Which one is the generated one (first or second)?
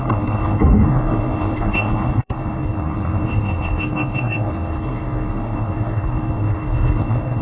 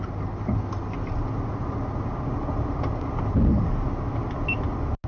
first